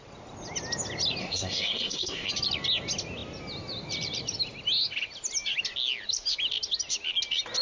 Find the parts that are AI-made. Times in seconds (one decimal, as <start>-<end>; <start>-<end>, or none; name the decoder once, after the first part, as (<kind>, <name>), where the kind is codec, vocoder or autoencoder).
1.2-2.3 (codec, SNAC)